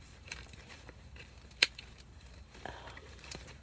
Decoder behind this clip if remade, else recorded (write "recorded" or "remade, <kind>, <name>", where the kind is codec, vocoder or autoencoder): remade, vocoder, BigVGAN v2